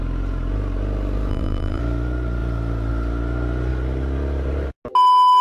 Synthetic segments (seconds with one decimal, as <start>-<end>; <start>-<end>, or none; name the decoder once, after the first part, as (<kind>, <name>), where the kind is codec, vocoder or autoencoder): 1.3-1.8 (vocoder, BigVGAN v2)